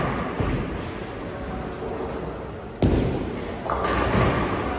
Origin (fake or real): real